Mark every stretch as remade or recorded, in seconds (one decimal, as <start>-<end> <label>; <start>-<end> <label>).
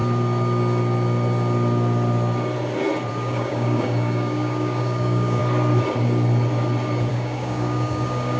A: 0.0-3.1 recorded; 3.1-5.4 remade; 5.4-7.1 recorded; 7.1-8.4 remade